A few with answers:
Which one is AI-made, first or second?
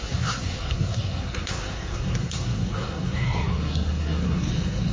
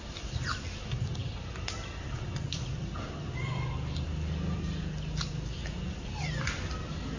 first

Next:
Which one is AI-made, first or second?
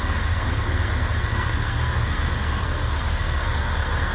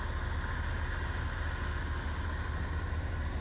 first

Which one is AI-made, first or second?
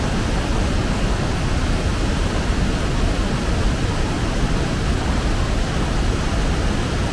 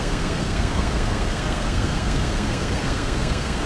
second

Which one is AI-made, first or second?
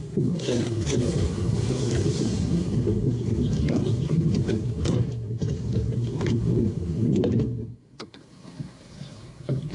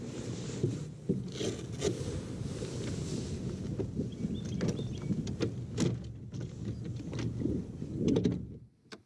first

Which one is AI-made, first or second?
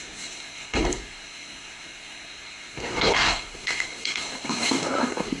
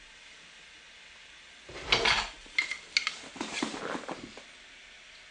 first